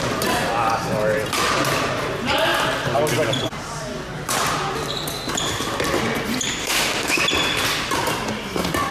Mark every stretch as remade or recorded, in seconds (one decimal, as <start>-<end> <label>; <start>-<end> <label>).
0.0-6.6 recorded; 6.6-7.2 remade; 7.2-8.9 recorded